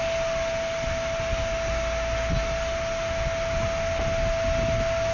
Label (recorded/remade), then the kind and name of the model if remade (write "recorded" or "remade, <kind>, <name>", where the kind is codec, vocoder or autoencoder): recorded